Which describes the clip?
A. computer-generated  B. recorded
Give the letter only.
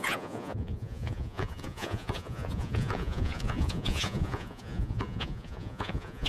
A